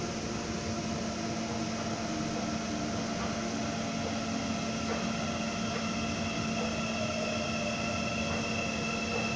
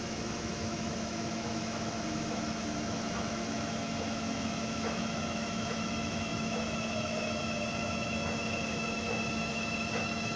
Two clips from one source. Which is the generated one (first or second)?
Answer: second